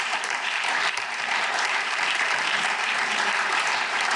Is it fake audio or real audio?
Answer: fake